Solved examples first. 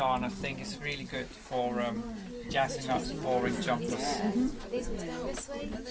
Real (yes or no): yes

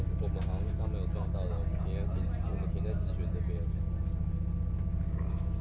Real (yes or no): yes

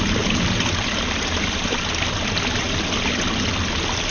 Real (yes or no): yes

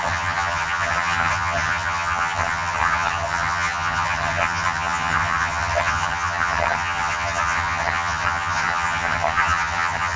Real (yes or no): no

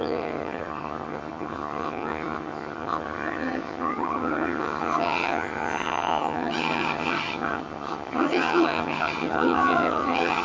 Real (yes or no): no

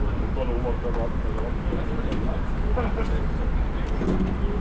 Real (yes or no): yes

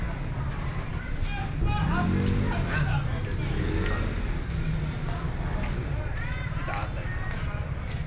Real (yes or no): yes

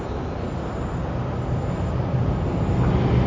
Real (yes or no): yes